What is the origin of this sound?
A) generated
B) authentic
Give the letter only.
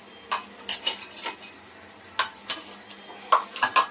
B